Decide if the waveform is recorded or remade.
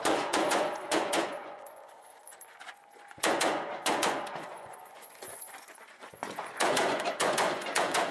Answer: remade